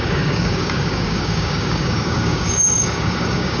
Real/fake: fake